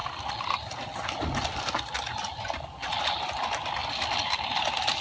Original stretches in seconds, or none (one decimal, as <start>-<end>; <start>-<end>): 0.0-3.8; 4.6-5.0